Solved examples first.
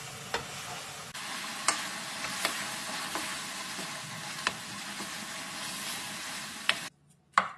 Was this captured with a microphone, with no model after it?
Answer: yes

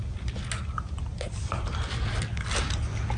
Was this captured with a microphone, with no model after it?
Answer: yes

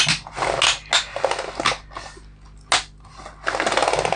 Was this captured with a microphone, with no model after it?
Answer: yes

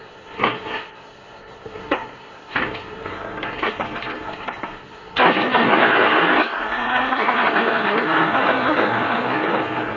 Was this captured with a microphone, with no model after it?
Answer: no